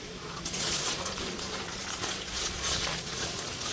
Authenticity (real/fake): fake